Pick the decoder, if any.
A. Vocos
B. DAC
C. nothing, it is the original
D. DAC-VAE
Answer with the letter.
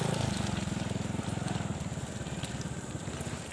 C